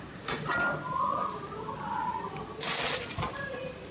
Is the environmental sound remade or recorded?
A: recorded